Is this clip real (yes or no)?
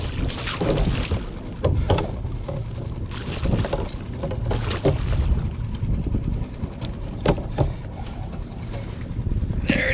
yes